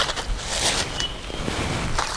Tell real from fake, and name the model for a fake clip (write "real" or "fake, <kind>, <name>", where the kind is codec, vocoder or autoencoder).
real